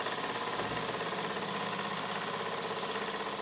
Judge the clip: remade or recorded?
recorded